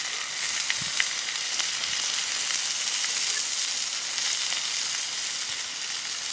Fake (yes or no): no